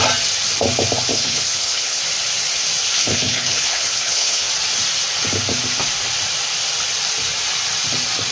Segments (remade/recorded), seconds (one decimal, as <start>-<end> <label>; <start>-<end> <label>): 0.0-1.1 recorded; 1.1-2.0 remade; 2.0-3.0 recorded; 3.0-4.5 remade; 4.5-8.3 recorded